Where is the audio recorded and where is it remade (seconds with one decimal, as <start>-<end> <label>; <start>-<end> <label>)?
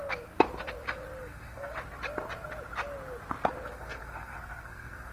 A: 0.0-1.2 recorded; 1.2-1.7 remade; 1.7-3.7 recorded; 3.7-5.1 remade